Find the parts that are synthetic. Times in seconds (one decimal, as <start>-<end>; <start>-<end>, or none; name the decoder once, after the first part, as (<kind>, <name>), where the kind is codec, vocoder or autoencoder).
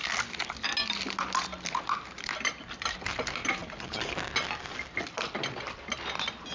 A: none